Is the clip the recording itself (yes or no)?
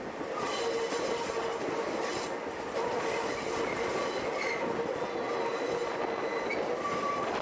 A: yes